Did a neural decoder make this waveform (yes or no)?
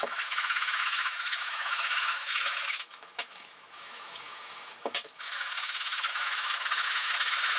yes